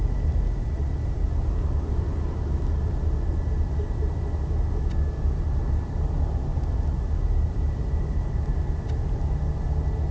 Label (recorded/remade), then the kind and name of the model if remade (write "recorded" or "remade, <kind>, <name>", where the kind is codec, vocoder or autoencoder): recorded